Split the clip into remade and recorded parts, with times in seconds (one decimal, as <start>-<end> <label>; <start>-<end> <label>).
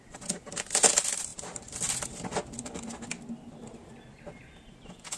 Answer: 0.0-5.2 recorded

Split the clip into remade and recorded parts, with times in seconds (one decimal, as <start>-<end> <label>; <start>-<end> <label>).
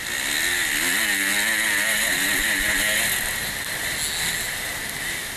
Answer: 0.0-5.4 recorded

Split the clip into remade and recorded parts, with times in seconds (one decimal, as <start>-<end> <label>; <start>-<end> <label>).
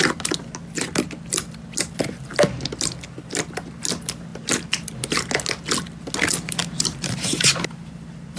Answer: 0.0-6.6 recorded; 6.6-8.4 remade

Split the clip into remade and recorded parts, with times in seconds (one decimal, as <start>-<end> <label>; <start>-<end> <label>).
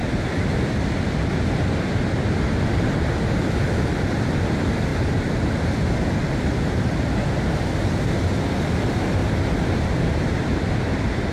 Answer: 0.0-4.9 recorded; 4.9-7.7 remade; 7.7-9.2 recorded; 9.2-9.9 remade; 9.9-10.5 recorded; 10.5-11.3 remade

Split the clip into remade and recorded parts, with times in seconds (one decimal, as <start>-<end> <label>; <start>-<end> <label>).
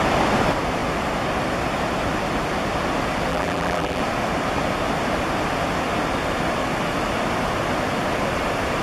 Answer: 0.0-3.3 recorded; 3.3-4.0 remade; 4.0-8.8 recorded